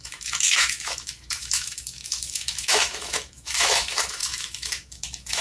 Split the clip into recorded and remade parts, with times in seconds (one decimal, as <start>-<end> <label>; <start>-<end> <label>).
0.0-5.4 remade